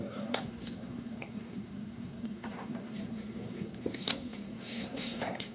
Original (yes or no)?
no